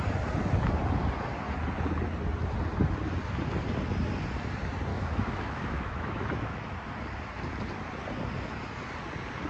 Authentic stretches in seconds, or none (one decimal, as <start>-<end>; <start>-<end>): 0.0-4.9; 6.7-9.5